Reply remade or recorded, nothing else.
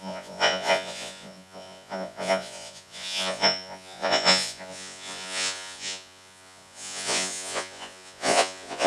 remade